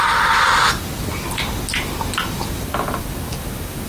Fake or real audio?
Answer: real